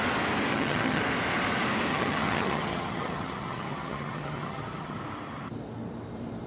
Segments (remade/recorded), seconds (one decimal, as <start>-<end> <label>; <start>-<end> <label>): 0.0-0.5 recorded; 0.5-1.0 remade; 1.0-1.9 recorded; 1.9-5.0 remade; 5.0-6.5 recorded